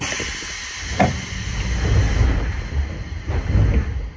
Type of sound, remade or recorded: recorded